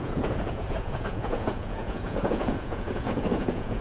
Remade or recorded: remade